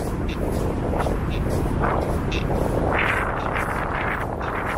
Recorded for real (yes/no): yes